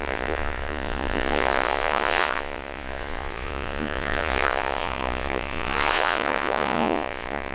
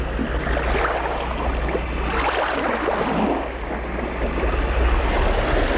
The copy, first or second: first